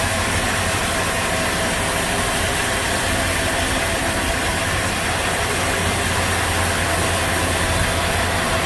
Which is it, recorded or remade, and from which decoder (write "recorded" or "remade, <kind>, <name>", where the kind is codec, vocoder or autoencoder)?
recorded